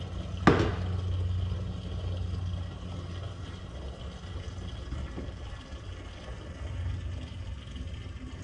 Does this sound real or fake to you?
real